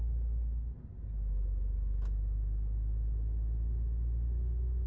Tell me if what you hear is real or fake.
real